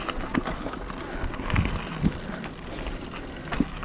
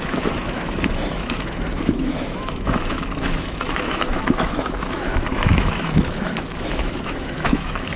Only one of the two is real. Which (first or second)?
first